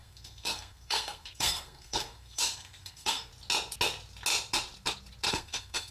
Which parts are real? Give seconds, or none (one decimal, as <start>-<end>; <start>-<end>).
3.3-5.3